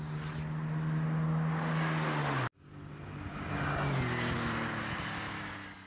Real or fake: real